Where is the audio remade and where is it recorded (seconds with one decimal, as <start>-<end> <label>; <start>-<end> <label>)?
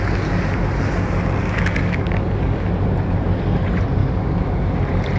0.0-1.4 recorded; 1.4-2.7 remade; 2.7-4.0 recorded; 4.0-4.7 remade; 4.7-5.2 recorded